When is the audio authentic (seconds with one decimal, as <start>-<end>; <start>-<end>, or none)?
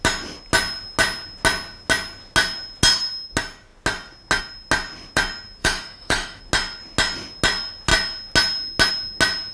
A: 0.0-5.6; 6.4-9.5